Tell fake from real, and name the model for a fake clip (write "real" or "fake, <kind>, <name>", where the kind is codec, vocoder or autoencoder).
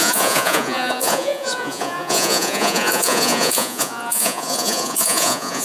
fake, vocoder, Vocos